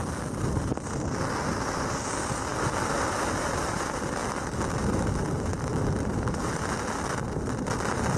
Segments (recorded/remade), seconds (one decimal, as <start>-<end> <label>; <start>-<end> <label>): 0.0-2.5 recorded; 2.5-6.5 remade; 6.5-8.2 recorded